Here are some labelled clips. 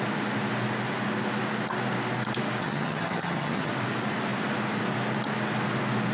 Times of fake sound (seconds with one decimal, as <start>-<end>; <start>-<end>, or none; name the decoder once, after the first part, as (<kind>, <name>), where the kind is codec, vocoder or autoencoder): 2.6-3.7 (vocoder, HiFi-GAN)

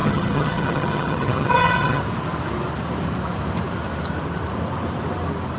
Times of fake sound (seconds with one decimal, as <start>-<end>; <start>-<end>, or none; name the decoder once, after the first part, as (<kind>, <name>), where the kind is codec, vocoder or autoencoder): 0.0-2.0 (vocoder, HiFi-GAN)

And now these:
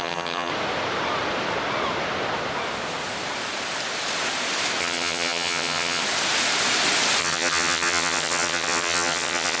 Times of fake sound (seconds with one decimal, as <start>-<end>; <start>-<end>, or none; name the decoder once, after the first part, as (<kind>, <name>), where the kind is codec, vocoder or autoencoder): 0.0-0.5 (vocoder, HiFi-GAN); 4.8-6.0; 7.2-9.6